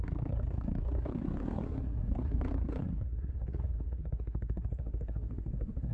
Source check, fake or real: fake